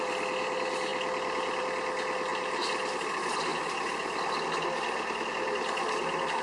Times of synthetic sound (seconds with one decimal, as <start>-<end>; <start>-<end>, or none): none